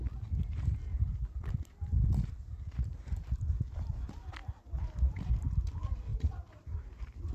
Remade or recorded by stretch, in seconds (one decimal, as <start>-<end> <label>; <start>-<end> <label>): 0.0-6.1 recorded; 6.1-7.3 remade

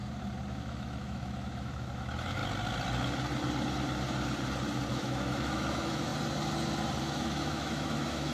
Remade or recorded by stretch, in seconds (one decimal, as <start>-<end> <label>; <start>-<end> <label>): 0.0-0.5 recorded; 0.5-2.4 remade; 2.4-4.9 recorded; 4.9-6.1 remade; 6.1-7.0 recorded; 7.0-8.3 remade

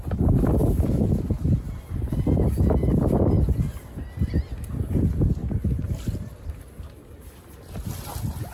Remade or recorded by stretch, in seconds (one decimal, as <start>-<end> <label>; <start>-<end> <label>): 0.0-0.6 recorded; 0.6-1.3 remade; 1.3-5.4 recorded; 5.4-6.6 remade; 6.6-8.5 recorded